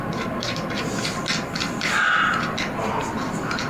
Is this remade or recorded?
recorded